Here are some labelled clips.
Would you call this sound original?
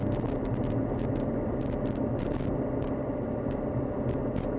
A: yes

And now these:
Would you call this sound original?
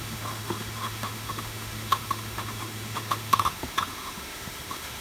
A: no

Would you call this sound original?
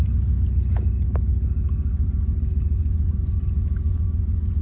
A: yes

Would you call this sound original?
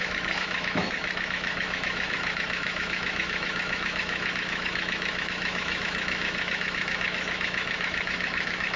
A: no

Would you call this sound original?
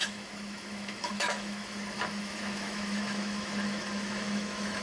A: no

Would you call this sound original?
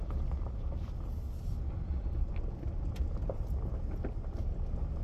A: yes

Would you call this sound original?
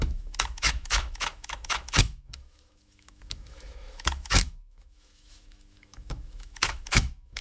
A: no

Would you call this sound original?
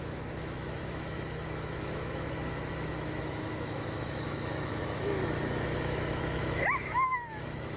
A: no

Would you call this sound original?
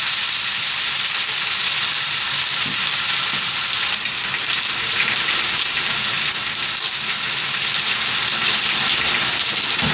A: yes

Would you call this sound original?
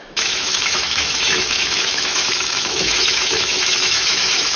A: no